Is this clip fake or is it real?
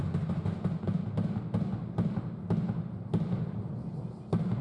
real